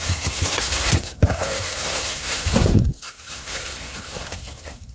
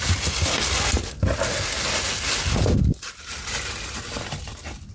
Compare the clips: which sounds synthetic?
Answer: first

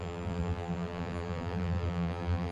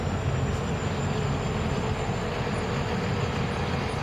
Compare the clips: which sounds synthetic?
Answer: first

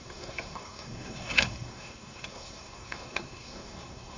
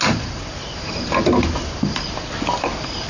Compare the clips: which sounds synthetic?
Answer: first